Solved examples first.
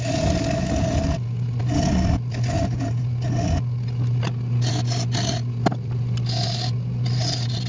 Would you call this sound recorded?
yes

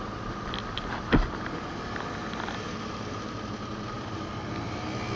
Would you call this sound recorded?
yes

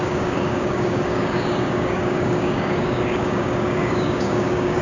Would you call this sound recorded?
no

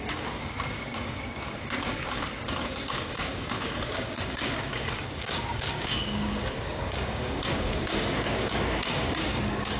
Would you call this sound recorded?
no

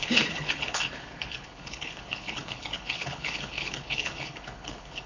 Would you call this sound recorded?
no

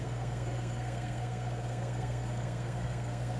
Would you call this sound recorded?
no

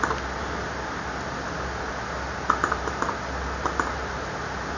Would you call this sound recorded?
yes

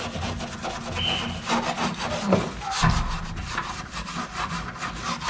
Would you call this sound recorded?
yes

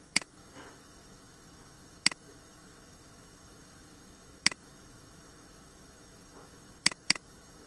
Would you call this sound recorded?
no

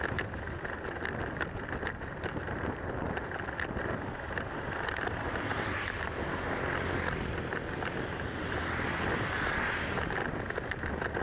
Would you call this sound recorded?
yes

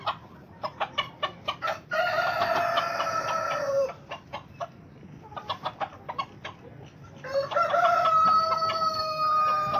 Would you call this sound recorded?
no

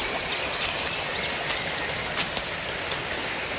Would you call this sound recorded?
yes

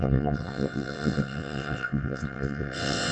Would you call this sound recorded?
no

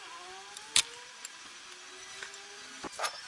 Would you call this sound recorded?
yes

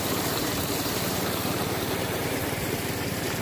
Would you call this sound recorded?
no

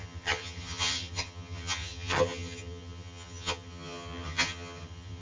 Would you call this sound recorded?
no